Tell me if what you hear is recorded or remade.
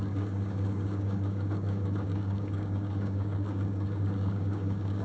remade